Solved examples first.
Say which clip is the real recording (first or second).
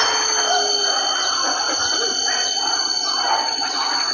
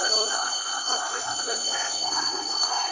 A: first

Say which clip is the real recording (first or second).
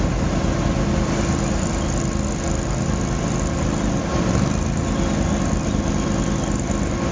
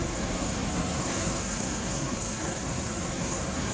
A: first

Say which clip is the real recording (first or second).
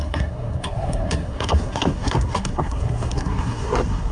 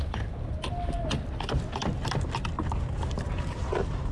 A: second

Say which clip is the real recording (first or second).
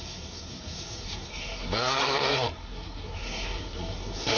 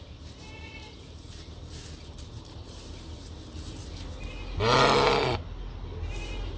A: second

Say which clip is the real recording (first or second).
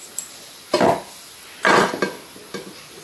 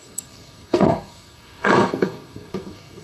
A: first